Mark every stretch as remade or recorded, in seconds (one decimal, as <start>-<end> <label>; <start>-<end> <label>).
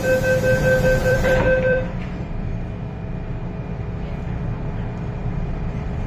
0.0-1.0 recorded; 1.0-2.5 remade; 2.5-5.2 recorded; 5.2-6.1 remade